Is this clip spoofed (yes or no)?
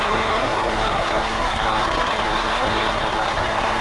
yes